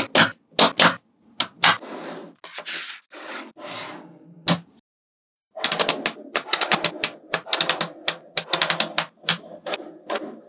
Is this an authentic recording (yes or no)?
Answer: yes